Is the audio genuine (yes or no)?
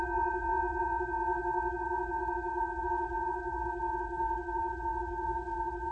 no